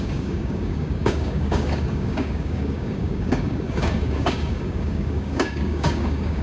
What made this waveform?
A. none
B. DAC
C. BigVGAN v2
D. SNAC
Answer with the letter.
B